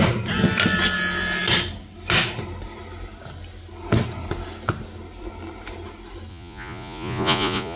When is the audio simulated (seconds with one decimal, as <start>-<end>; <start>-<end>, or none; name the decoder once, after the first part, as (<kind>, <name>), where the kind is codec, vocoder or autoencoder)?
6.3-7.8 (vocoder, Vocos)